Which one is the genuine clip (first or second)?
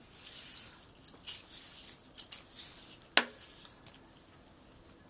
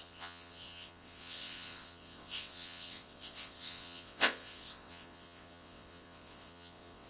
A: first